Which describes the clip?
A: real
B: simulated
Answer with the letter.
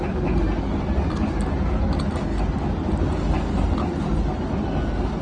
A